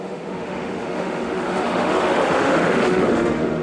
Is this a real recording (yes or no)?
no